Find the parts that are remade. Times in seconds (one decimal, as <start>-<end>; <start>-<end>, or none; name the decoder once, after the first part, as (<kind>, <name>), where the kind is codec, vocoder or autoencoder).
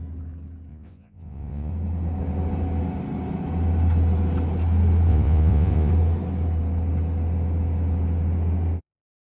0.7-1.7 (vocoder, Vocos); 5.1-5.9